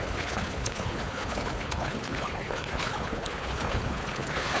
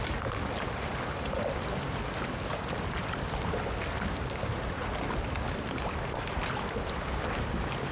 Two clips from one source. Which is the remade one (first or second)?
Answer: first